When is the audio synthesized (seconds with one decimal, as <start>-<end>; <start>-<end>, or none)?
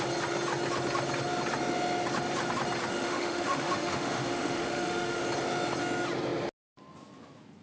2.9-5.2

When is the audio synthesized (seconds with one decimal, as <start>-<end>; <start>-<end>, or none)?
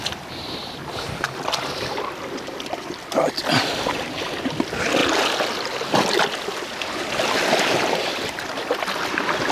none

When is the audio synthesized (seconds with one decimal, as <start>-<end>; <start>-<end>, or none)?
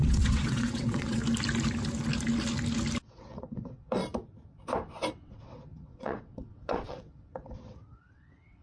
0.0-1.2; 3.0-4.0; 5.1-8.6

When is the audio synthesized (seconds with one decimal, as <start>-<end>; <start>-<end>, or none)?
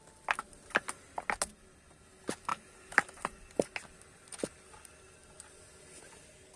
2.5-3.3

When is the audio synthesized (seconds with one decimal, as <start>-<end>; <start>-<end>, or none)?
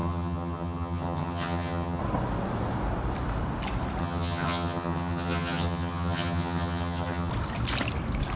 0.0-2.0; 4.0-7.3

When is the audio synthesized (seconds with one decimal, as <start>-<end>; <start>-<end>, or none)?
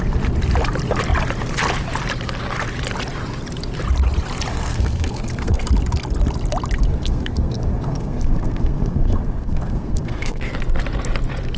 4.5-5.7; 6.9-10.4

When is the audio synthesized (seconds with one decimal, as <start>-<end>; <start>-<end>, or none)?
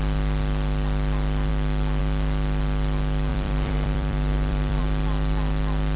3.3-4.8